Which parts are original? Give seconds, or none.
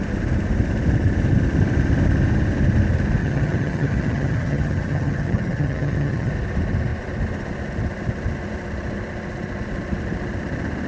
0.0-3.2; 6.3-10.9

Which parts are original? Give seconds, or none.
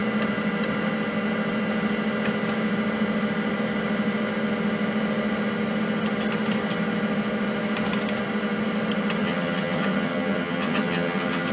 0.0-9.2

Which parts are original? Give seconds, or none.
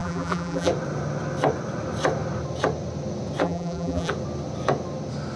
0.7-3.4; 4.1-5.4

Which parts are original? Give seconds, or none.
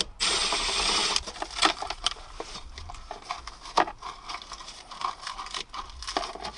0.0-0.4; 2.6-4.6; 5.4-6.6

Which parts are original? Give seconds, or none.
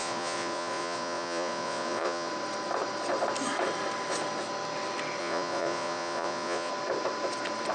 2.3-5.2; 6.7-7.7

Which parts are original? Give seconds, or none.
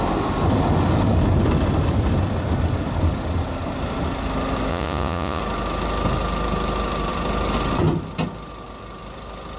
0.0-4.7; 5.4-9.6